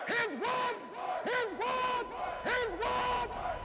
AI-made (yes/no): no